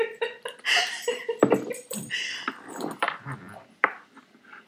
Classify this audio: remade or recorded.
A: remade